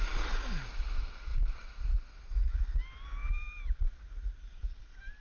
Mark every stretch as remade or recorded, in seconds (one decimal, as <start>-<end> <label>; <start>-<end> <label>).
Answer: 0.0-5.2 recorded

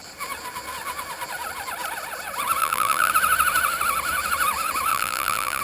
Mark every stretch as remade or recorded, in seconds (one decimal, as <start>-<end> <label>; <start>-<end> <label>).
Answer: 0.0-2.6 recorded; 2.6-3.1 remade; 3.1-4.9 recorded; 4.9-5.6 remade

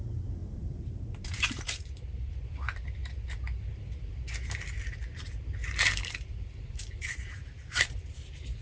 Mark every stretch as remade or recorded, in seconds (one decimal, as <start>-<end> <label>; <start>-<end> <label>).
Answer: 0.0-0.4 recorded; 0.4-2.3 remade; 2.3-5.6 recorded; 5.6-8.6 remade

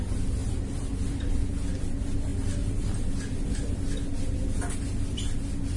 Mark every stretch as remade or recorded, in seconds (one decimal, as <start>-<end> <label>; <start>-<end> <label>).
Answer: 0.0-0.4 recorded; 0.4-1.3 remade; 1.3-2.3 recorded; 2.3-4.0 remade; 4.0-5.8 recorded